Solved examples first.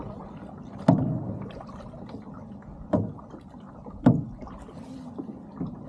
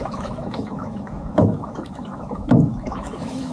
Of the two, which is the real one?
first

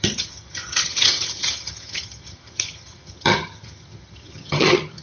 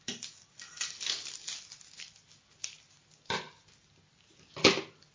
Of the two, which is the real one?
second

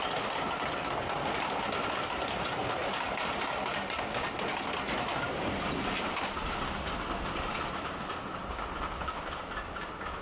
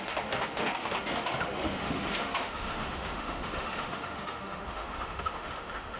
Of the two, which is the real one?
first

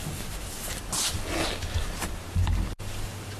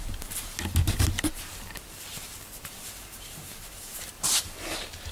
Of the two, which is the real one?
first